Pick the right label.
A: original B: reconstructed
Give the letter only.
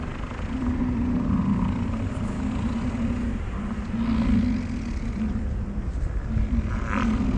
A